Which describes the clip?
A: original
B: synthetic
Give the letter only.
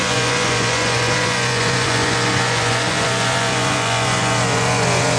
B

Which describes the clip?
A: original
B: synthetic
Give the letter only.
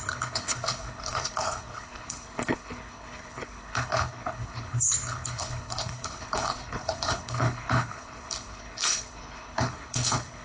B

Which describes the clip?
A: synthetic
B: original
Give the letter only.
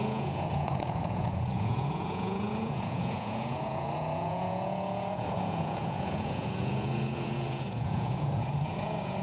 A